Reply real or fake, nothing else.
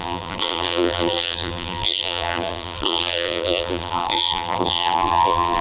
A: fake